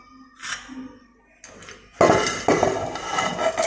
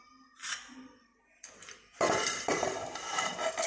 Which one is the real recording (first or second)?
first